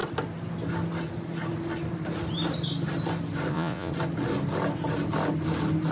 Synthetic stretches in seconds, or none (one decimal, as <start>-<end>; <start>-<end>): 3.5-3.9